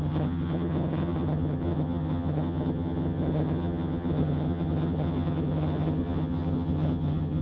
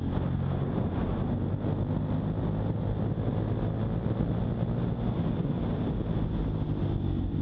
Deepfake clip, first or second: first